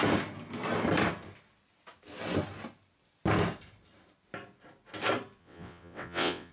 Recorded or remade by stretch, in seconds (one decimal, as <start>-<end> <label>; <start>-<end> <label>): 0.0-5.4 recorded; 5.4-6.5 remade